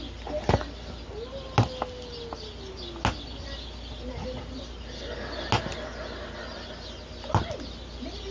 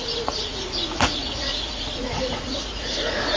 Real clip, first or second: first